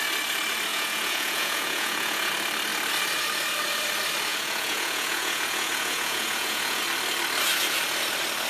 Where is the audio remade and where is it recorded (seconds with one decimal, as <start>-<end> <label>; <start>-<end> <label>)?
0.0-0.7 recorded; 0.7-2.3 remade; 2.3-4.3 recorded; 4.3-6.8 remade; 6.8-8.5 recorded